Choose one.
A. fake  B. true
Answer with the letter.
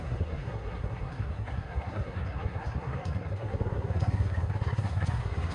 A